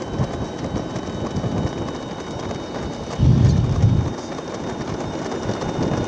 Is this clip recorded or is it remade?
recorded